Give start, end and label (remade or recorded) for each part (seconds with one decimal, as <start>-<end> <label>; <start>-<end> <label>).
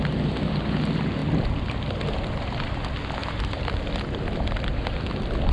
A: 0.0-3.2 recorded; 3.2-3.8 remade; 3.8-5.5 recorded